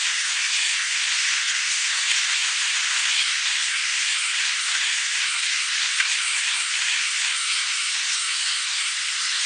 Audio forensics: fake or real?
fake